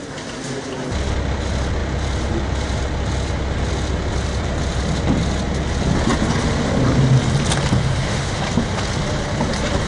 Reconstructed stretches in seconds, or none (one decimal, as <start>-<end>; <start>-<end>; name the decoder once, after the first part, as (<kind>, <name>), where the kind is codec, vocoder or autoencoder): 7.8-8.4 (autoencoder, DAC-VAE)